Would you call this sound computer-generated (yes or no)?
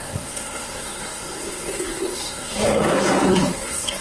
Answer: yes